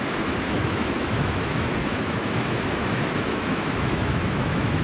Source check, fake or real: fake